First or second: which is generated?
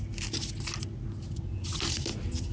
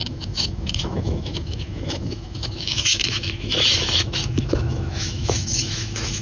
second